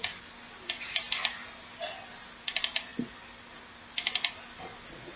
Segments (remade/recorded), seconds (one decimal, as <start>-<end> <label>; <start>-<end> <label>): 0.0-5.2 recorded